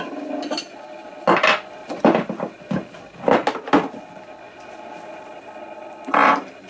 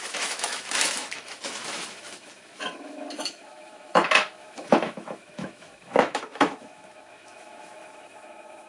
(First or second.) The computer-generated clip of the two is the second